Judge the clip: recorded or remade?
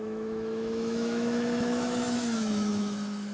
remade